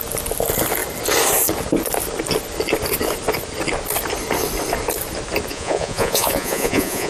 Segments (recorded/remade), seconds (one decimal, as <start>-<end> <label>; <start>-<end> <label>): 0.0-5.5 recorded; 5.5-7.1 remade